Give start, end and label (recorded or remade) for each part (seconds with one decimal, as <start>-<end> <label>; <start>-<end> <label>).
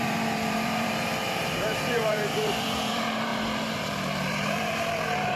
0.0-5.4 remade